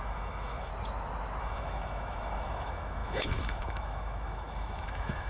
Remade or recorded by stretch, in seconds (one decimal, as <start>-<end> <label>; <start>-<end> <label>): 0.0-0.7 remade; 0.7-1.4 recorded; 1.4-5.3 remade